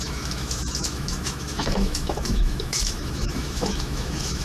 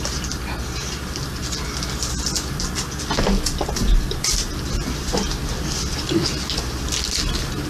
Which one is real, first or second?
second